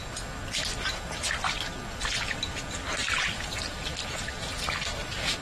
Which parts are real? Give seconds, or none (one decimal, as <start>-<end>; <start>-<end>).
0.0-3.0; 5.0-5.4